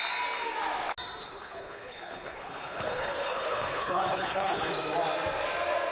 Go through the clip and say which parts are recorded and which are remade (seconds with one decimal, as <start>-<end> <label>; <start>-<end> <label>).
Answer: 0.0-1.2 recorded; 1.2-4.7 remade; 4.7-5.9 recorded